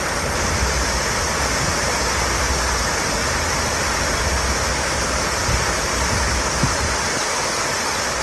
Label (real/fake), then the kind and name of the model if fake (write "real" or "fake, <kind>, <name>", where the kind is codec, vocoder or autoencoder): real